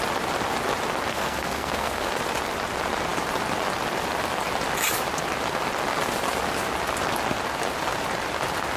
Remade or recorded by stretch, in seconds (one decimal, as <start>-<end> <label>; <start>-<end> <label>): 0.0-1.1 recorded; 1.1-2.1 remade; 2.1-8.8 recorded